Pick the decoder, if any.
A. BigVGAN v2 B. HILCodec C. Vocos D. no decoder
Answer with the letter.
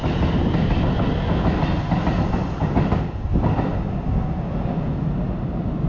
D